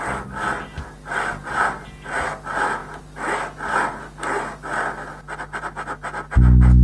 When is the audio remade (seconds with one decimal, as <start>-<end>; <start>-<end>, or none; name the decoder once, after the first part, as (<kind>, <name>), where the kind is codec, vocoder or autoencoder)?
none